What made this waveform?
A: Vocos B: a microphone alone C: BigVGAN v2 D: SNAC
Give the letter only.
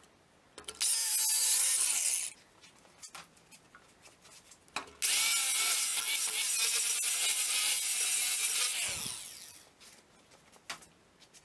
B